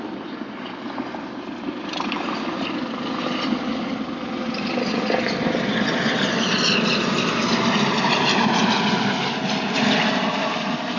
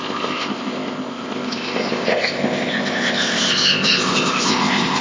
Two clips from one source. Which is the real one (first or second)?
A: first